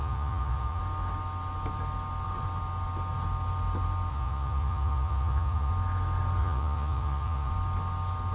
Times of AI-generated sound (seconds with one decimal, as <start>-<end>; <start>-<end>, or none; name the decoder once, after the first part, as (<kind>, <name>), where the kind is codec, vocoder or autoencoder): 0.0-0.8 (vocoder, Vocos); 4.1-5.7; 6.4-7.5